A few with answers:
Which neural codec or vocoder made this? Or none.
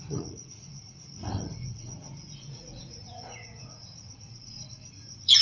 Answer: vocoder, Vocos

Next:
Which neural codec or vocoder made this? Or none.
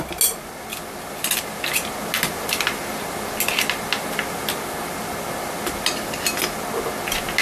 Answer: none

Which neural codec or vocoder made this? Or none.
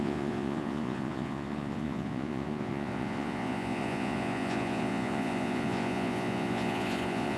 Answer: vocoder, Vocos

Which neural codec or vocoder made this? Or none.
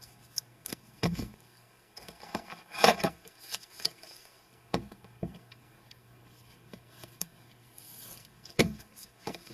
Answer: codec, SNAC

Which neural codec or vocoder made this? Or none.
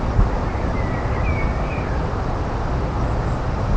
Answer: none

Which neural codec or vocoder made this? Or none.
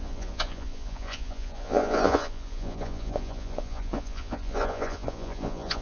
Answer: vocoder, Vocos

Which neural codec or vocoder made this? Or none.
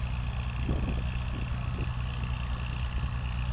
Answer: none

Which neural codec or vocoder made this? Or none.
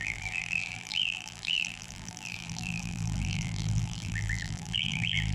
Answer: vocoder, BigVGAN v2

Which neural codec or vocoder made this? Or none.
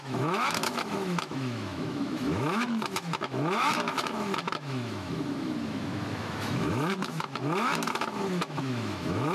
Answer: autoencoder, DAC-VAE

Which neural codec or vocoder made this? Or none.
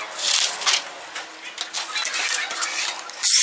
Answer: none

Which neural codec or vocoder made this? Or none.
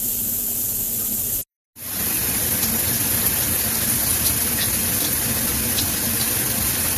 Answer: none